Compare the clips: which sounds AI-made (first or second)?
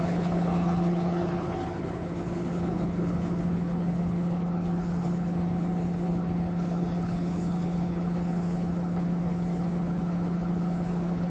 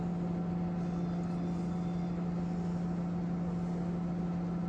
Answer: first